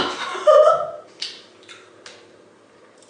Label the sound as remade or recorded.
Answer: recorded